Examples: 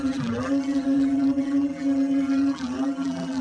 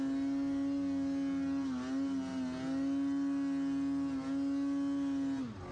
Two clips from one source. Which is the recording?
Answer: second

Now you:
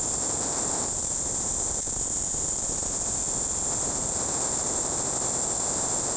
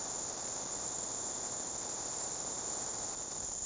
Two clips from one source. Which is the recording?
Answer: first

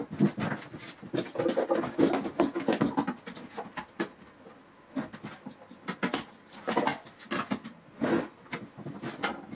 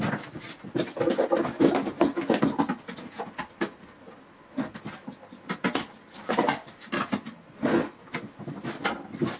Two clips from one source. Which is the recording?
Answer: first